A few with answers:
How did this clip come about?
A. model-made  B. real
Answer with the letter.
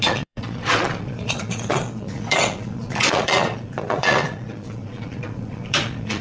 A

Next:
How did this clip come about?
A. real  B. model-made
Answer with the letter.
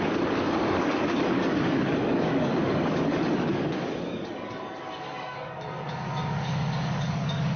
B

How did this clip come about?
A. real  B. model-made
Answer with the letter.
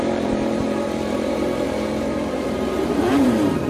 B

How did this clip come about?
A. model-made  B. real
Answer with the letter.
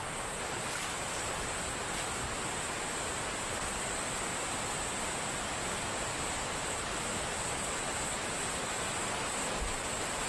B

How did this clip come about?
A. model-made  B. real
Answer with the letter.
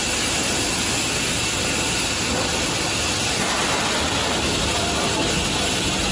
B